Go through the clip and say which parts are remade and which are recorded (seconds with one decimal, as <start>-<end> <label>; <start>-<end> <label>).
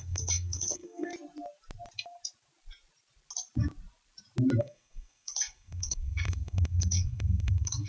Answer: 0.0-1.1 remade; 1.1-4.6 recorded; 4.6-7.9 remade